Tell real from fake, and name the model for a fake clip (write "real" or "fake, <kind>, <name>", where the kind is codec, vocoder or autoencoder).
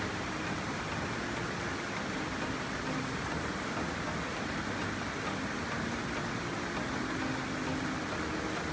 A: real